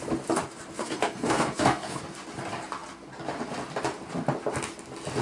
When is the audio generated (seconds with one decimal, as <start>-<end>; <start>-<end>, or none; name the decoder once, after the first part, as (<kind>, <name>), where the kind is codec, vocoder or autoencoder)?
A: 0.8-2.0 (codec, SNAC)